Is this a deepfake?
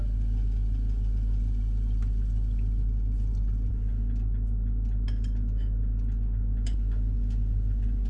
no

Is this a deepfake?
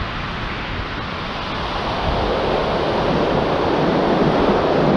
no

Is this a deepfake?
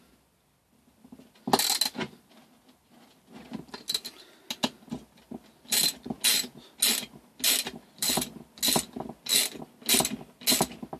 no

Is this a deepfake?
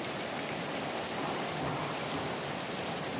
no